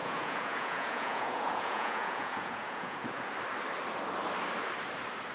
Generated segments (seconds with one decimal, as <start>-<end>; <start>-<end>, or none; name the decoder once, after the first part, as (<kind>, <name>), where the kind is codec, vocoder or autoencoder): 0.0-3.2 (vocoder, Vocos)